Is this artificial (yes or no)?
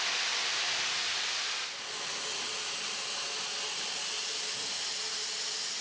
no